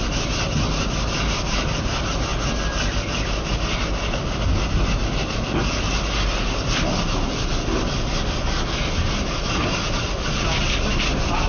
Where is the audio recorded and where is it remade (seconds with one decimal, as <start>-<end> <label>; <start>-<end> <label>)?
0.0-11.5 recorded